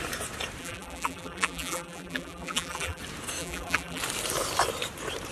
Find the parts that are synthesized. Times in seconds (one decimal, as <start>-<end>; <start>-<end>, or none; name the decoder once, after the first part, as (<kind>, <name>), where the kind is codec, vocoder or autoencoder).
0.6-3.0 (vocoder, BigVGAN v2); 3.4-4.0